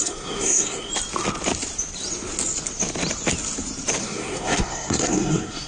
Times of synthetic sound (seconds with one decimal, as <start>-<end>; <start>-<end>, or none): 0.0-0.9; 4.0-5.7